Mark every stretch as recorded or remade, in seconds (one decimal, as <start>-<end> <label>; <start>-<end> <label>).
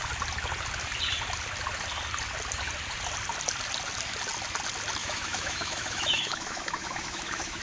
0.0-5.0 recorded; 5.0-7.6 remade